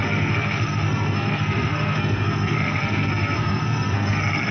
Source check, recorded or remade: remade